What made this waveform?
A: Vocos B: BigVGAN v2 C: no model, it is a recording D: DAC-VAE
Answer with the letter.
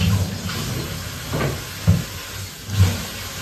C